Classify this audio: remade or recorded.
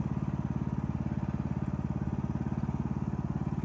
recorded